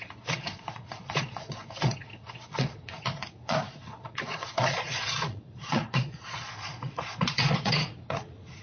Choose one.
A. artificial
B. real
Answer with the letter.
A